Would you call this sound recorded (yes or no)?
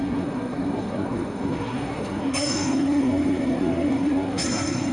no